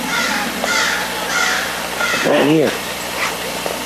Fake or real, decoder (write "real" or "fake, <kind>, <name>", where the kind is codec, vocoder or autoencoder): real